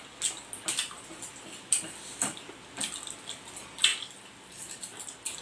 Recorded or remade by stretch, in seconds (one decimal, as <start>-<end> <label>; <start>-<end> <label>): 0.0-5.4 recorded